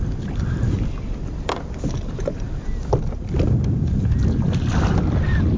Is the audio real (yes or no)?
yes